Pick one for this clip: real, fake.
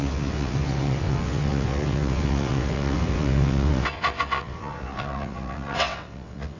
fake